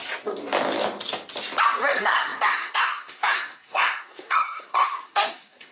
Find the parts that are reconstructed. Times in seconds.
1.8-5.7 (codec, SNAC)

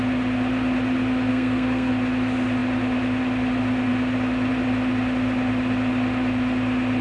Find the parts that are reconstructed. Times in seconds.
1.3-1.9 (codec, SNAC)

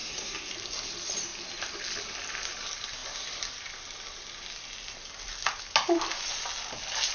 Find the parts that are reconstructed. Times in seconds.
0.0-0.5 (codec, SNAC)

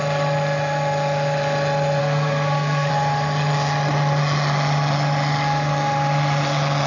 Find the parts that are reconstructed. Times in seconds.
2.0-2.9 (codec, SNAC)

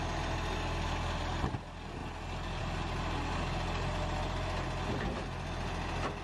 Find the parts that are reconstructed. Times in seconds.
none

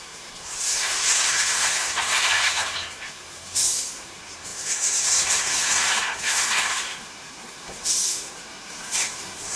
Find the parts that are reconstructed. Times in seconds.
0.0-9.6 (codec, SNAC)

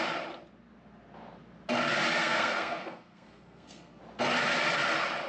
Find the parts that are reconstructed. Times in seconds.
2.2-4.0 (codec, SNAC)

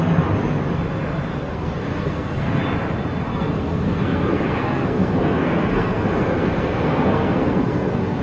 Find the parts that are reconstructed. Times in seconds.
1.3-2.6 (codec, SNAC); 3.3-8.2